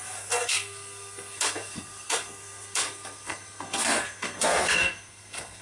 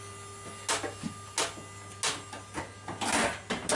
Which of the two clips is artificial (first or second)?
first